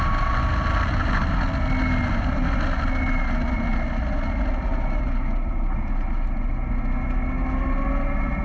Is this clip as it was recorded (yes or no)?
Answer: yes